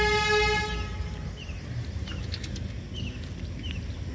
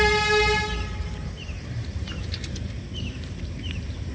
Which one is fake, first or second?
second